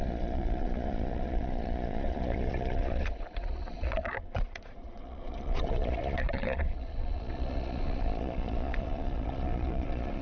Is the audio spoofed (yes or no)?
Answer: yes